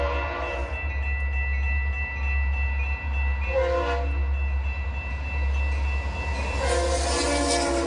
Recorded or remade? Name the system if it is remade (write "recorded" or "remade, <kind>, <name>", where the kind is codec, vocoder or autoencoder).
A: recorded